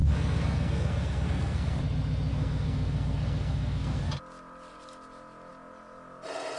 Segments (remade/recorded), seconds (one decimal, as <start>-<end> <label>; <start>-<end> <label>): 0.0-1.8 remade; 1.8-2.3 recorded; 2.3-4.0 remade; 4.0-6.6 recorded